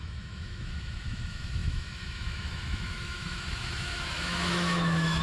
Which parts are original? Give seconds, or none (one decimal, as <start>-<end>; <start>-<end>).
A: none